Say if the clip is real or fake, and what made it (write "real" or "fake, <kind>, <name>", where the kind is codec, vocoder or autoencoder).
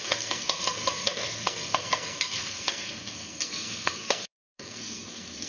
fake, codec, SNAC